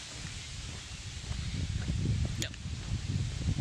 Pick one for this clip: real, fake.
real